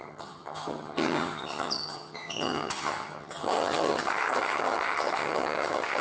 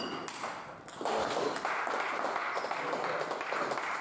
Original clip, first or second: second